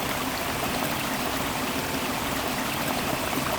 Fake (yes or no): no